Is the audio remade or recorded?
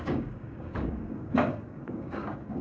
remade